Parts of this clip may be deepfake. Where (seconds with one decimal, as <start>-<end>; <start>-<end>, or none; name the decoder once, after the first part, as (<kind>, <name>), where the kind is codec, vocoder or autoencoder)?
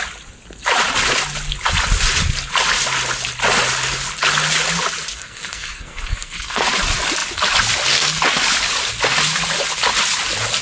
5.1-6.7 (codec, SNAC)